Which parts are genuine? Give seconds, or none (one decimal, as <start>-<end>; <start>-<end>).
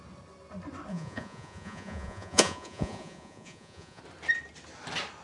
0.0-0.9; 4.0-5.2